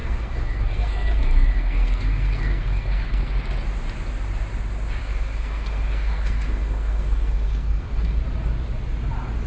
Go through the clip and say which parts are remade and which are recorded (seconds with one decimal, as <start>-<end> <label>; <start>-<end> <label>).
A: 0.0-3.3 remade; 3.3-5.0 recorded; 5.0-8.2 remade; 8.2-9.5 recorded